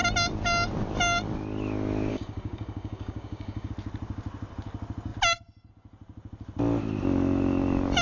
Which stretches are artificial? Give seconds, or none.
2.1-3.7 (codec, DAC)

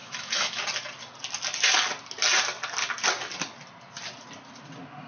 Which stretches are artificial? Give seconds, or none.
0.0-0.6 (autoencoder, DAC-VAE)

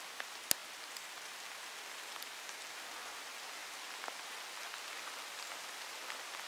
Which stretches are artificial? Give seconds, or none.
none

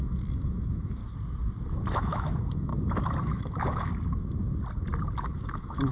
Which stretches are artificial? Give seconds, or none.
0.0-1.0 (autoencoder, DAC-VAE); 1.9-2.7; 3.2-3.9; 5.2-5.9